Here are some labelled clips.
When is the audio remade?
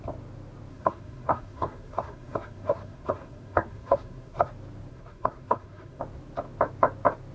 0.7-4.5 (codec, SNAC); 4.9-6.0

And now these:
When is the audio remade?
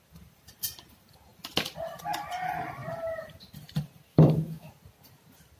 4.1-4.7 (autoencoder, DAC-VAE)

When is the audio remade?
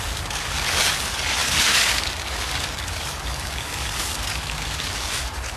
0.0-5.6 (codec, DAC)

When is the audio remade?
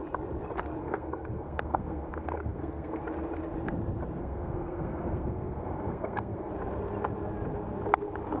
0.8-3.0 (codec, SNAC); 4.2-6.5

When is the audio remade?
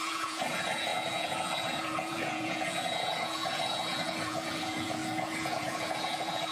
0.0-6.5 (vocoder, Vocos)